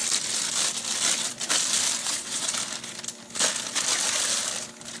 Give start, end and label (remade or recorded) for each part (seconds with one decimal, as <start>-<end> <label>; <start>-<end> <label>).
0.0-2.0 recorded; 2.0-2.5 remade; 2.5-5.0 recorded